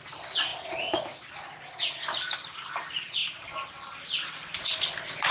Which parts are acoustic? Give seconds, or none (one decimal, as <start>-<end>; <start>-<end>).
0.0-5.3

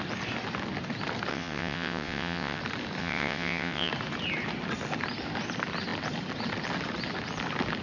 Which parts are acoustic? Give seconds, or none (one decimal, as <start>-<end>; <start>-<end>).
0.0-1.3; 2.6-3.0; 3.9-7.8

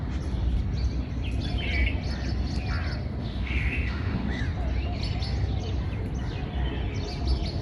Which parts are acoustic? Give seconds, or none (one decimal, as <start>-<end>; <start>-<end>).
0.0-3.2; 4.4-7.6

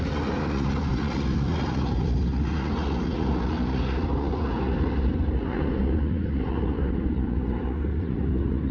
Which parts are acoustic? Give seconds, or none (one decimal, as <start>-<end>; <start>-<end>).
none

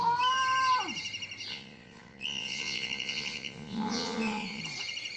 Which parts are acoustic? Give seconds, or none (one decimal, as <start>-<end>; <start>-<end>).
0.0-1.5; 4.6-5.2

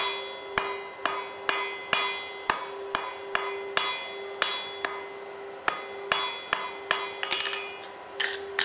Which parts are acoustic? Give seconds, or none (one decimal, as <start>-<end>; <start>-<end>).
0.0-8.6

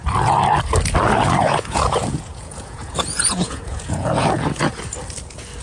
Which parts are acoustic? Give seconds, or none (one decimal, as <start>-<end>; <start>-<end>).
0.0-1.4; 4.8-5.6

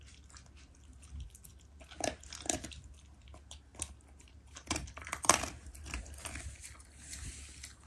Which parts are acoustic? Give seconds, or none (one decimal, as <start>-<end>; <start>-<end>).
0.0-7.9